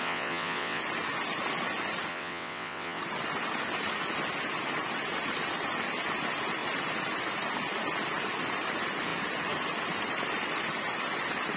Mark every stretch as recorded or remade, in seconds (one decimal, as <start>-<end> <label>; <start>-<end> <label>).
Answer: 0.0-0.8 remade; 0.8-2.1 recorded; 2.1-3.0 remade; 3.0-11.6 recorded